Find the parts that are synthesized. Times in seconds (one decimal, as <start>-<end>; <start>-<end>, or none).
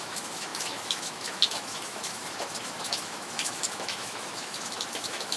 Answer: 0.0-5.4